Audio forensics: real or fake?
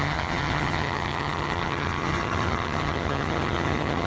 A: fake